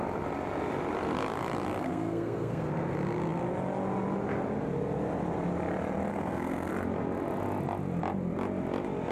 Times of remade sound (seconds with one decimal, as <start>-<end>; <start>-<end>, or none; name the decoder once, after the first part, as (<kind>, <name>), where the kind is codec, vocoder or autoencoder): 1.8-2.7 (codec, SNAC); 6.1-6.7